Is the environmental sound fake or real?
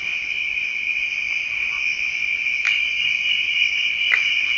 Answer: real